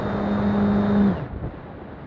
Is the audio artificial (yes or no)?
no